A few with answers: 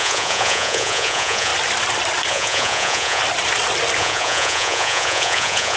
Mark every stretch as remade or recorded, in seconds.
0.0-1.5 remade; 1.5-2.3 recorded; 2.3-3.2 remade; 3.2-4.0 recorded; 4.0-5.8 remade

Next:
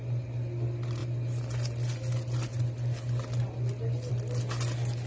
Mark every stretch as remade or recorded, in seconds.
0.0-5.1 recorded

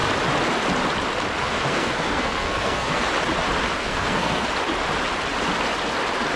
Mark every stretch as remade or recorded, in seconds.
0.0-1.4 recorded; 1.4-3.1 remade; 3.1-3.8 recorded; 3.8-4.5 remade; 4.5-6.4 recorded

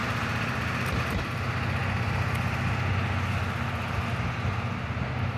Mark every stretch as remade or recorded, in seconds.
0.0-1.2 remade; 1.2-5.4 recorded

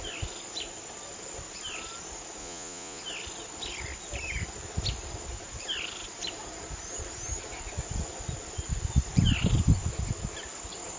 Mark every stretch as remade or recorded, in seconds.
0.0-2.4 recorded; 2.4-3.0 remade; 3.0-11.0 recorded